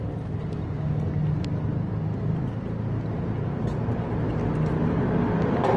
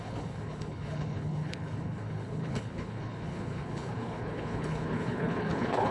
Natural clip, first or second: first